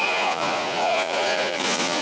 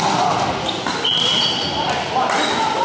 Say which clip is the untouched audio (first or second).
second